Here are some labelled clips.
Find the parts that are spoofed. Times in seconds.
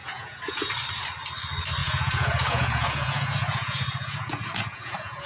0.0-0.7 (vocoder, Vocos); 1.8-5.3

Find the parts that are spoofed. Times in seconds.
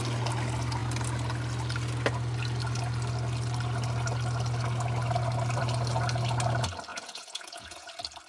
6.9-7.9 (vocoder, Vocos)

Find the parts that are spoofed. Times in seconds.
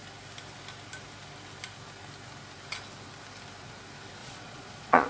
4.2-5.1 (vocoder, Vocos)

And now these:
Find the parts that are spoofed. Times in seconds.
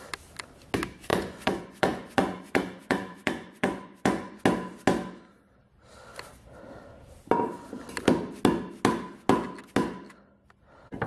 1.1-4.4 (vocoder, Vocos)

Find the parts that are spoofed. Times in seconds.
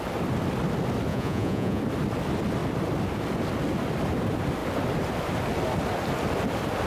1.1-1.8 (vocoder, Vocos)